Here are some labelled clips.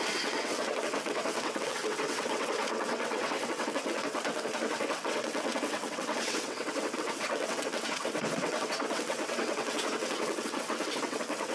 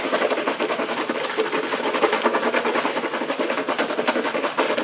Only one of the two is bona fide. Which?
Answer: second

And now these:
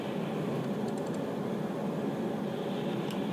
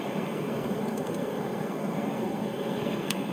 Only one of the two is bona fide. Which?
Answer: first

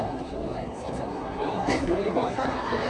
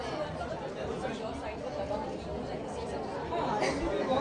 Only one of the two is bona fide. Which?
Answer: second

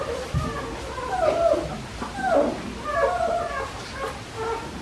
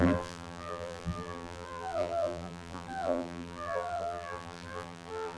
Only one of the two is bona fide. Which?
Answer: first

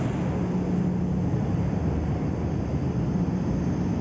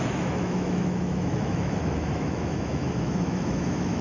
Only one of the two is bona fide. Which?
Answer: first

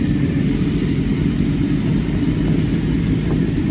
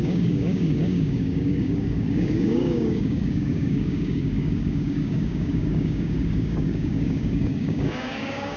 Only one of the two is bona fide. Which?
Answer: first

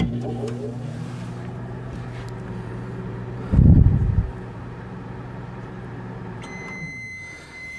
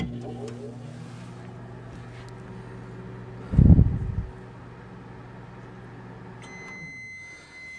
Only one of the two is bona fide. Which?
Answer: second